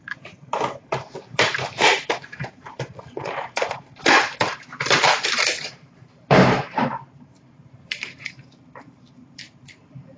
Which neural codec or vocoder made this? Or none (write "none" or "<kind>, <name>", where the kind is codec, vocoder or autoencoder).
vocoder, BigVGAN v2